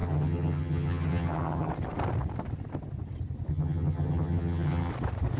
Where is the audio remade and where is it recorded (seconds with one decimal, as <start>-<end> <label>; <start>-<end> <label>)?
0.0-1.7 remade; 1.7-3.5 recorded; 3.5-4.9 remade; 4.9-5.4 recorded